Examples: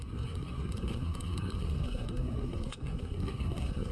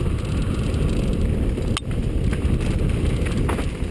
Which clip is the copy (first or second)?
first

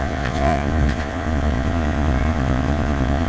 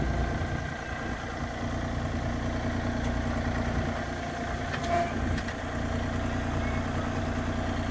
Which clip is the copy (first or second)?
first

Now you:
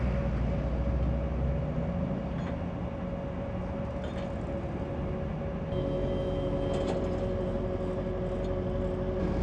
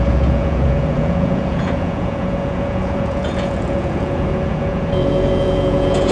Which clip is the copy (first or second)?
second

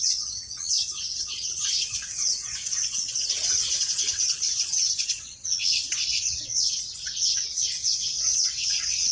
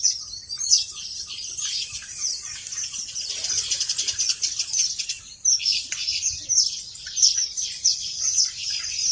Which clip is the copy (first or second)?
first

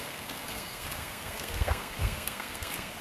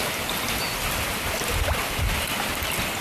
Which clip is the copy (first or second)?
first